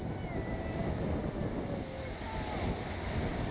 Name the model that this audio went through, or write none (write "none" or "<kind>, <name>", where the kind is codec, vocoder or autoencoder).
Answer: none